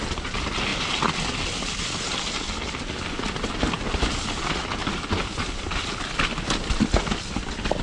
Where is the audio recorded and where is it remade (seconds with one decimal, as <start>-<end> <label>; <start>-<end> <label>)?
0.0-7.8 recorded